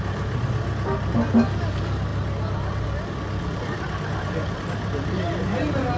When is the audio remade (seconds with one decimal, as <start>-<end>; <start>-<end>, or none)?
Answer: none